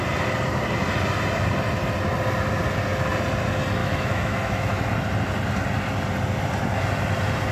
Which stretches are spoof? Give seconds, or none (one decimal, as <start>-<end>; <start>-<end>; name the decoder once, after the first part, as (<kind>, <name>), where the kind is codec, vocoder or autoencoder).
3.8-4.9 (autoencoder, DAC-VAE)